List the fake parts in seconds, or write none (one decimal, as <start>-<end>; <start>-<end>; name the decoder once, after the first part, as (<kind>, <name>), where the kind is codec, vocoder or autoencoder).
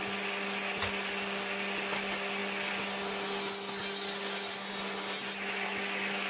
none